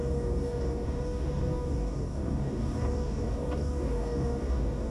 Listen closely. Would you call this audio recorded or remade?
remade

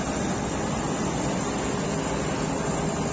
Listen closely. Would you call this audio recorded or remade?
recorded